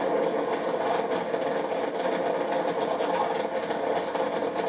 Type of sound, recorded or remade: recorded